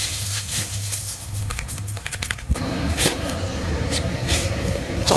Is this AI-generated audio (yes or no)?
yes